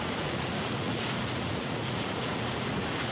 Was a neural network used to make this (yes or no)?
yes